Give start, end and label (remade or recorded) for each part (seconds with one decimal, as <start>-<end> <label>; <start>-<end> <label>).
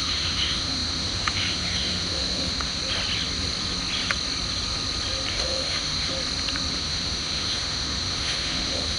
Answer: 0.0-2.8 remade; 2.8-5.3 recorded; 5.3-6.1 remade; 6.1-6.7 recorded; 6.7-9.0 remade